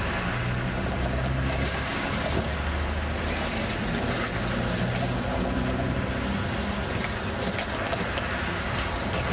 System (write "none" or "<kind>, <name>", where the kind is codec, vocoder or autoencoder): none